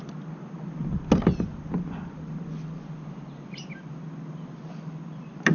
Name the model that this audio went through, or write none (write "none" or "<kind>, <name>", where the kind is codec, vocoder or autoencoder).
none